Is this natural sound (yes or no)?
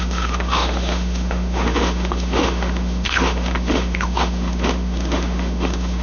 no